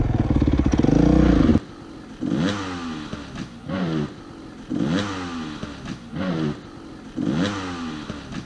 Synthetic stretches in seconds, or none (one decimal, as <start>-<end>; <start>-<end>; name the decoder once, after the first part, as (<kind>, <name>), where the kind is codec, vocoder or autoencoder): none